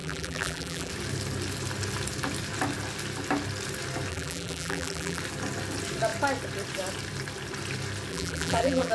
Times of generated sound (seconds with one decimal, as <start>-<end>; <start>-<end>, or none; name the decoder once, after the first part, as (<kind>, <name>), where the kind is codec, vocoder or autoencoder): 0.0-0.9 (vocoder, BigVGAN v2); 4.1-5.2; 8.1-8.9